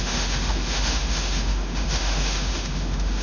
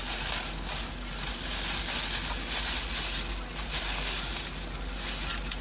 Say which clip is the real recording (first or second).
second